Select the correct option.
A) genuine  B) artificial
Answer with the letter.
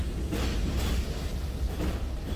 A